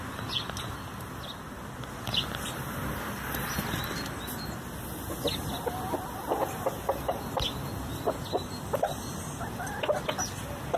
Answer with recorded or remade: recorded